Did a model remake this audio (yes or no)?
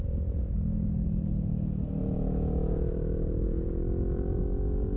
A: no